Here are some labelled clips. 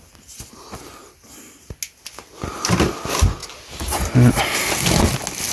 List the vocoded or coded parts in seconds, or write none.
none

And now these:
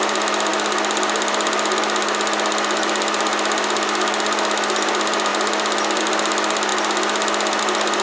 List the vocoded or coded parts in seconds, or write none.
none